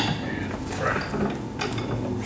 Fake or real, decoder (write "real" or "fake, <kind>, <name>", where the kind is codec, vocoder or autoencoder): real